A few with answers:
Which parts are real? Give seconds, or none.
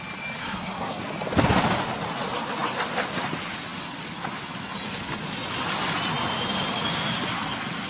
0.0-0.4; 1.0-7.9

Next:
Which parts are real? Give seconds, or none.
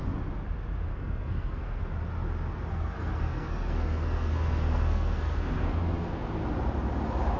0.0-0.9; 1.8-2.7; 6.1-7.4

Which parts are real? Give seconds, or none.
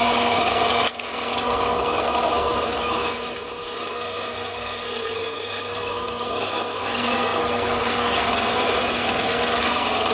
none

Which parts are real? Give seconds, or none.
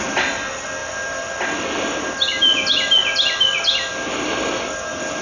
0.0-5.2